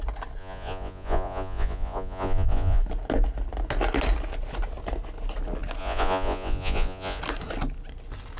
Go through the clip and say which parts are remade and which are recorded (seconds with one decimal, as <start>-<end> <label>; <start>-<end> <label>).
0.0-0.4 recorded; 0.4-2.8 remade; 2.8-5.8 recorded; 5.8-7.2 remade; 7.2-8.4 recorded